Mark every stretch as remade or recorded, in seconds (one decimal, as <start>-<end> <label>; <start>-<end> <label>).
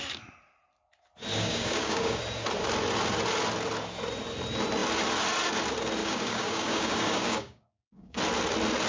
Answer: 0.0-1.3 recorded; 1.3-2.2 remade; 2.2-6.0 recorded; 6.0-8.2 remade; 8.2-8.9 recorded